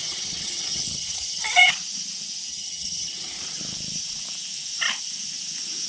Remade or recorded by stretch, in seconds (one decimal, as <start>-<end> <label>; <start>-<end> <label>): 0.0-1.7 remade; 1.7-2.5 recorded; 2.5-3.4 remade; 3.4-5.9 recorded